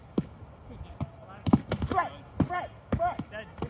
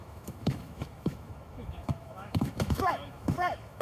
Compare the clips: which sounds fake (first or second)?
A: second